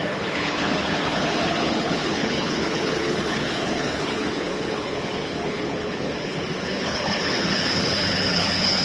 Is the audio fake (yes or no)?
yes